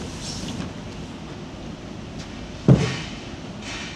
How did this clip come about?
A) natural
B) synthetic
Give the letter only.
B